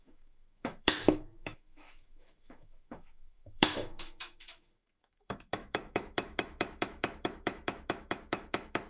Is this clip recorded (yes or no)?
no